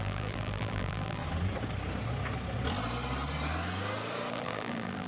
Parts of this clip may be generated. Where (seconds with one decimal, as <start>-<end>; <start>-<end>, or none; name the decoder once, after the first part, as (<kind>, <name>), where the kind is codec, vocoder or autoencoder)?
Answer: 0.0-1.2 (vocoder, BigVGAN v2); 4.3-5.1